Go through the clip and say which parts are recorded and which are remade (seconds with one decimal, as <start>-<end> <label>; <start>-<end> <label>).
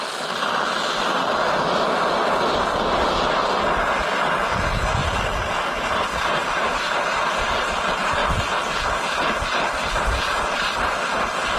0.0-5.0 recorded; 5.0-7.4 remade; 7.4-11.6 recorded